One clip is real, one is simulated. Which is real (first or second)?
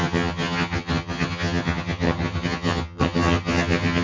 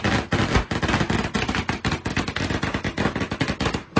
second